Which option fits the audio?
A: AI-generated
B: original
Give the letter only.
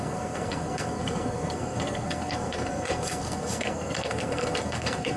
A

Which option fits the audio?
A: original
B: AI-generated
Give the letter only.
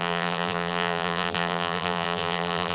B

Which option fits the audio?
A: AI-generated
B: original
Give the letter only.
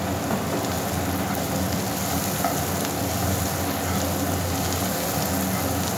B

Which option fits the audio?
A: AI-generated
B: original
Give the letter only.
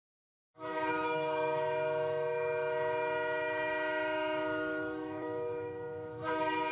A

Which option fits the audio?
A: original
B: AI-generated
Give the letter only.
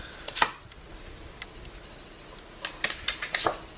A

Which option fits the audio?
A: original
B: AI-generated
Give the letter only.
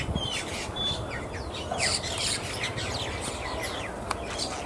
A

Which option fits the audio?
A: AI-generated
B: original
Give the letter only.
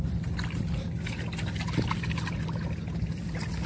B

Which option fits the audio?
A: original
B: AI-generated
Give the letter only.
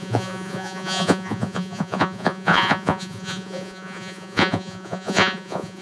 B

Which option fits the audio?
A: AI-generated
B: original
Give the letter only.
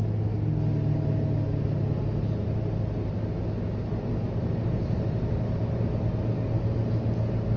B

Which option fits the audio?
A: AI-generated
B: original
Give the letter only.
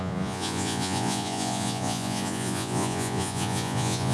A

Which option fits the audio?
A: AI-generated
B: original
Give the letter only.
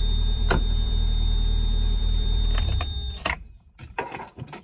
A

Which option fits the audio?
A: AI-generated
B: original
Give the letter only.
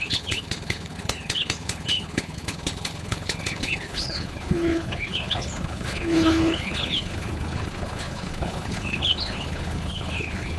A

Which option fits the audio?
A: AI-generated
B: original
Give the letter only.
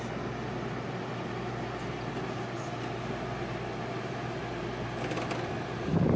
B